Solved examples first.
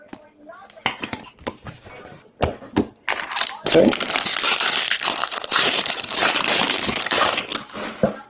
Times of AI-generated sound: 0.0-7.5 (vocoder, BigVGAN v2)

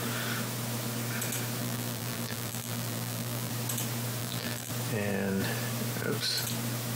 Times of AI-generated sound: 1.6-3.5 (vocoder, BigVGAN v2); 4.2-4.7

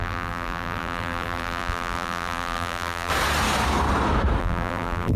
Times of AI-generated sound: 0.0-3.1 (vocoder, BigVGAN v2); 4.4-5.2

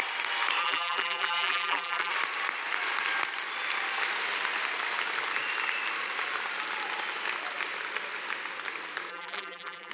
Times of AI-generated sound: 0.6-2.1 (vocoder, BigVGAN v2); 9.1-9.9

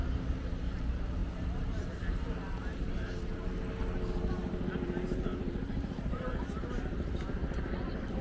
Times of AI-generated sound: 0.0-8.2 (vocoder, BigVGAN v2)

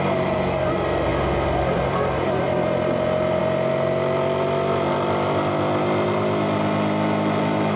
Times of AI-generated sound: 1.1-3.4 (vocoder, BigVGAN v2)

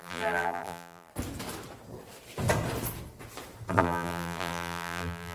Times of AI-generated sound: 0.0-1.1 (vocoder, BigVGAN v2); 3.7-5.3